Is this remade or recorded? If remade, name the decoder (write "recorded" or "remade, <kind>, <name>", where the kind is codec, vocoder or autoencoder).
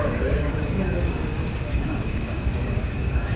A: remade, codec, DAC